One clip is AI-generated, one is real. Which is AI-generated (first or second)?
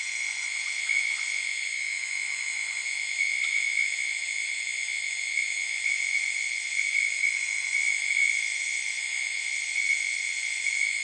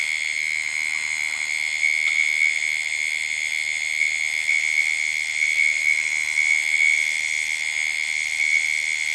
first